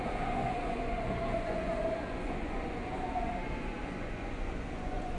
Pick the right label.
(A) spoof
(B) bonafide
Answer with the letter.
A